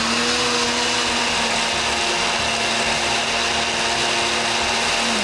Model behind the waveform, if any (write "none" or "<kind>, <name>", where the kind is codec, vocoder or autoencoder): none